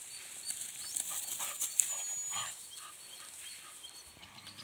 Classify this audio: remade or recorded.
recorded